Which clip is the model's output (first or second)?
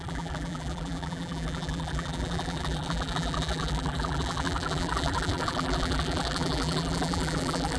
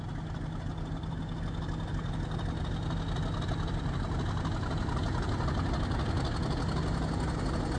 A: first